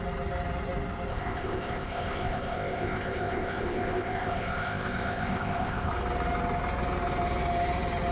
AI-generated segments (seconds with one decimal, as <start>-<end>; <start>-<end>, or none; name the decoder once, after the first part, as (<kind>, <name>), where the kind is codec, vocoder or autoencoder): 1.1-5.9 (codec, ZipCodec)